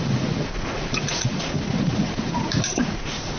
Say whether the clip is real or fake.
fake